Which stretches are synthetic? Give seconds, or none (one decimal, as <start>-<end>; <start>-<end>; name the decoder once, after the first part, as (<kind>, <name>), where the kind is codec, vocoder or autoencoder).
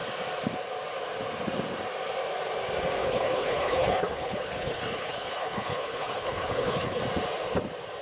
3.0-7.0 (codec, HILCodec)